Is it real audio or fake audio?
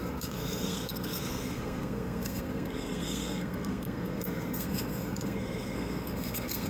fake